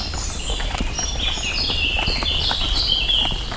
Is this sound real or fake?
real